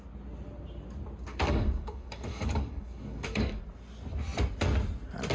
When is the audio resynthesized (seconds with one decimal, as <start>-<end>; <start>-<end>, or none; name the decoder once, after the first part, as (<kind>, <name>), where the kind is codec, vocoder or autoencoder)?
1.3-3.6 (codec, DAC)

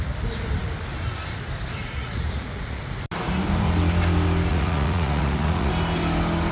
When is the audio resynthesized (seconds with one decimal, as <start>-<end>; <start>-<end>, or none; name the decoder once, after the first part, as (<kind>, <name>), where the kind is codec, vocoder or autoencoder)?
1.8-2.8 (vocoder, Vocos); 4.5-5.7

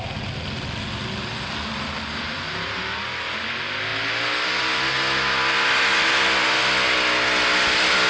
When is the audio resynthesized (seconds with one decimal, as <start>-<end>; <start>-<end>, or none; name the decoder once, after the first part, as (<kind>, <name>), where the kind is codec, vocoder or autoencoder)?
none

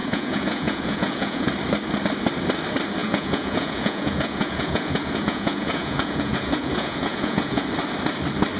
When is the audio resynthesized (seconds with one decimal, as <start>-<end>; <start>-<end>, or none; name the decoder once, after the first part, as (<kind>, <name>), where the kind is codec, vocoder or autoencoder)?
0.0-1.5 (vocoder, Vocos); 3.0-7.6